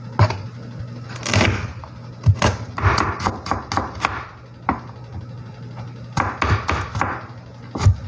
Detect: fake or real real